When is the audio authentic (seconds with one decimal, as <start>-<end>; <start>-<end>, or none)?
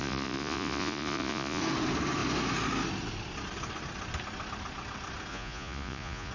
1.6-5.3